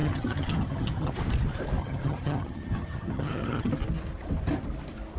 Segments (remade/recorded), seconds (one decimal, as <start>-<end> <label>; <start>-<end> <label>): 0.0-1.1 remade; 1.1-1.8 recorded; 1.8-3.7 remade; 3.7-5.2 recorded